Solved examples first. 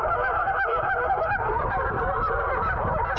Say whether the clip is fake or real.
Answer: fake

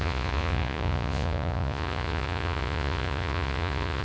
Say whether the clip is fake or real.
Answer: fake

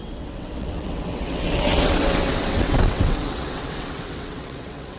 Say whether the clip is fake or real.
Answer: fake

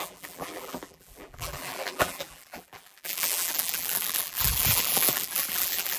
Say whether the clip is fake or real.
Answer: fake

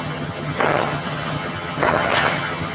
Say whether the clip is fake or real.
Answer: fake